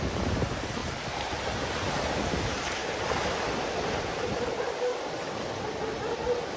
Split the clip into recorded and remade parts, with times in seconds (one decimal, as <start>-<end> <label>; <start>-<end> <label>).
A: 0.0-2.8 remade; 2.8-4.1 recorded; 4.1-4.9 remade; 4.9-6.6 recorded